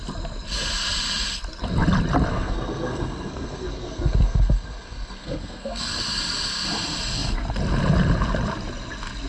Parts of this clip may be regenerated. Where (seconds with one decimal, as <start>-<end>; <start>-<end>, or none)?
2.3-6.0